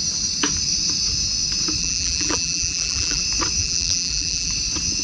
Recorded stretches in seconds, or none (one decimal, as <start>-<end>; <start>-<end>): 0.0-1.8; 3.2-3.6; 4.5-5.0